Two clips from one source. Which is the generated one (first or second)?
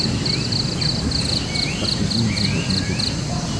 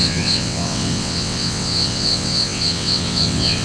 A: second